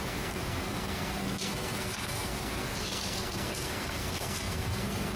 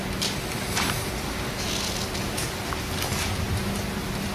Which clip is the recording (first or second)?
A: second